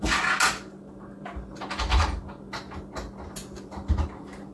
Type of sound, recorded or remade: recorded